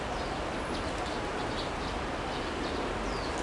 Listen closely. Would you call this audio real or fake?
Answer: real